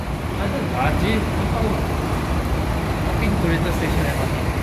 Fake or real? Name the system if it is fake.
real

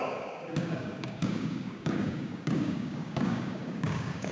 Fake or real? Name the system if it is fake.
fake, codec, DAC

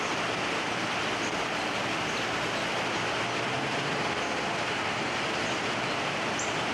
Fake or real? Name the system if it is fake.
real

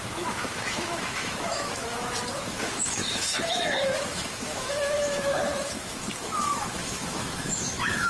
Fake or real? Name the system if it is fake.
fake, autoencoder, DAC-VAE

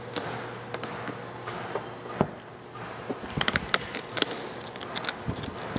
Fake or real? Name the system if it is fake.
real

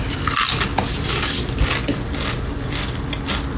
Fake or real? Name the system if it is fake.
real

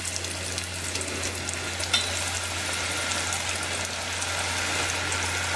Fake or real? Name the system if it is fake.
real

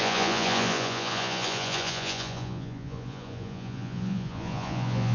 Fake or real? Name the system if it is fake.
fake, vocoder, Vocos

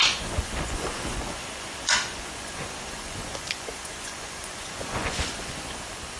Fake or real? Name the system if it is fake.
fake, vocoder, Vocos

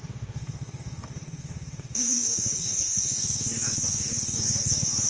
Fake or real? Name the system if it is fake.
fake, codec, DAC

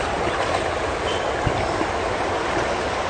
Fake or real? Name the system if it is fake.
real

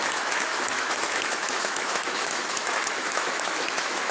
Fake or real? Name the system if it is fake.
fake, autoencoder, DAC-VAE